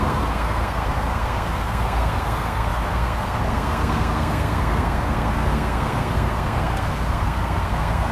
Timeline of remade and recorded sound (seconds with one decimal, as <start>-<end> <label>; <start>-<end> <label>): 0.0-8.1 remade